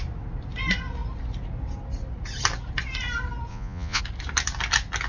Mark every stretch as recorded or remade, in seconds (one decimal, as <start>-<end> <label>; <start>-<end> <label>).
0.0-3.5 recorded; 3.5-4.0 remade; 4.0-5.1 recorded